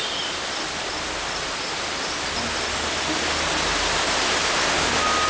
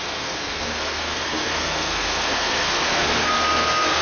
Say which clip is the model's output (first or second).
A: second